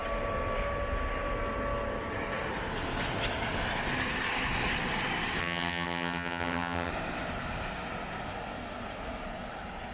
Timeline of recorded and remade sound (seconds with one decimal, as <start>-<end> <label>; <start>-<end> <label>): 0.0-5.4 recorded; 5.4-6.9 remade; 6.9-9.9 recorded